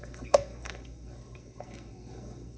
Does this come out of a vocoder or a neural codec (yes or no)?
yes